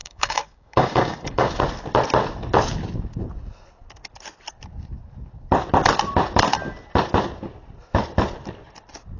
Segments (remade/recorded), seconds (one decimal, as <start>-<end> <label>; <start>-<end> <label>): 0.0-1.6 remade; 1.6-9.2 recorded